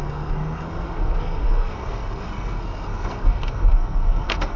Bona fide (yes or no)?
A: no